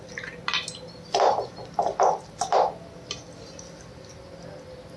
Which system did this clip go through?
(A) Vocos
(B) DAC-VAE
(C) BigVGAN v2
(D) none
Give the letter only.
D